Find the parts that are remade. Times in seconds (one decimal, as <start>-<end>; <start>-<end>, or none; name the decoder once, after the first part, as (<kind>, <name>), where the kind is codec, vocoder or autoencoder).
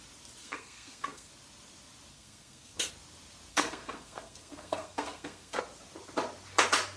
0.4-1.3 (codec, SNAC); 2.1-2.9; 3.5-5.6